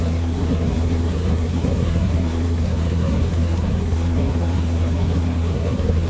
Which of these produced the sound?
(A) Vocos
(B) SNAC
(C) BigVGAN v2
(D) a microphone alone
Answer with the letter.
B